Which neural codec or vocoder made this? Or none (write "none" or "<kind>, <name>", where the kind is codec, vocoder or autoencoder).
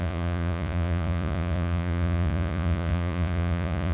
vocoder, Vocos